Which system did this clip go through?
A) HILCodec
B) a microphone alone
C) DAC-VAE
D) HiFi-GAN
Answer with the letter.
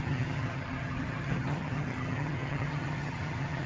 D